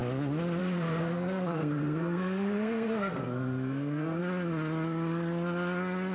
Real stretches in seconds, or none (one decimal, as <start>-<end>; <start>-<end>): 0.0-1.0; 4.2-6.1